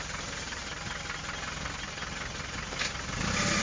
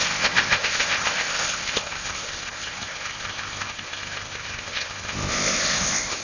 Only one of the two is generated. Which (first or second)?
second